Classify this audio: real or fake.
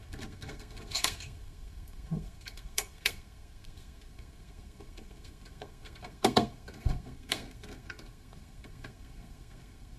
fake